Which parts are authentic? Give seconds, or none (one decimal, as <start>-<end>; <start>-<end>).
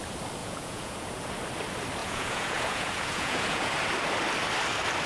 0.0-0.4; 1.3-2.0; 3.7-5.1